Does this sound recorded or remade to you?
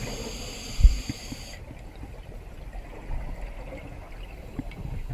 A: recorded